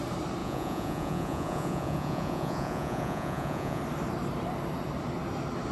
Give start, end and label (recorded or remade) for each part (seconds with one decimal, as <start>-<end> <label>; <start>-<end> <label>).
0.0-0.4 recorded; 0.4-3.8 remade; 3.8-5.7 recorded